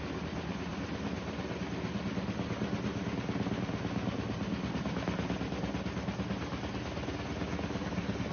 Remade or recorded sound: recorded